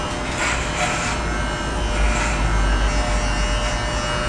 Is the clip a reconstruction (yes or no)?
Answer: no